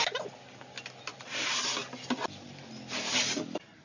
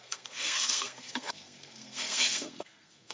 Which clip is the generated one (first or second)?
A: second